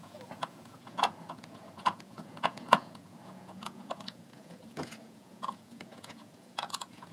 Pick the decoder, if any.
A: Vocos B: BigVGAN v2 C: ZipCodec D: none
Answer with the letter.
A